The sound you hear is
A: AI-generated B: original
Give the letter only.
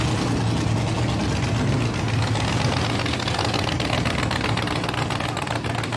B